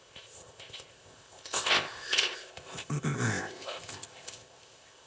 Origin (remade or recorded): remade